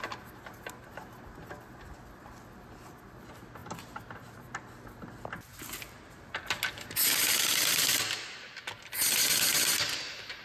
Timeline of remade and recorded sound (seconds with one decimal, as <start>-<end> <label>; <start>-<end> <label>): 0.0-10.4 recorded